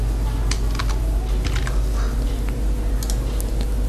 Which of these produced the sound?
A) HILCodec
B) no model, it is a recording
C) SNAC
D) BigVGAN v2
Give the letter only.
B